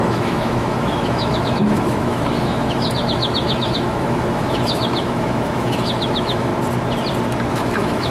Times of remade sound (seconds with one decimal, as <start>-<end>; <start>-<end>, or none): 0.0-6.5; 7.5-8.1